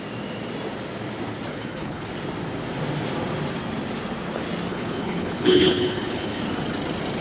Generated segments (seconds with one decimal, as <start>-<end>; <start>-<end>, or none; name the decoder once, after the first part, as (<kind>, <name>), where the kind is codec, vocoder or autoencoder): 1.5-2.1 (codec, HILCodec); 4.7-6.4